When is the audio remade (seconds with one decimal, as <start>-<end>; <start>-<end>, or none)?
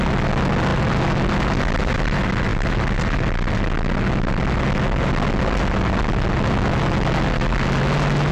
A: none